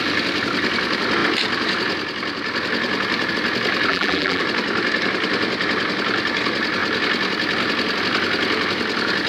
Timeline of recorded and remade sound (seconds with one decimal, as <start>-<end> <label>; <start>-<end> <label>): 0.0-3.9 recorded; 3.9-4.4 remade; 4.4-9.3 recorded